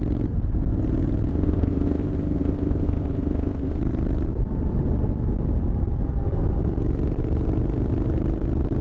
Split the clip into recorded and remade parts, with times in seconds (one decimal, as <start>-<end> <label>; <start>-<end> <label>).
0.0-1.3 recorded; 1.3-3.8 remade; 3.8-8.8 recorded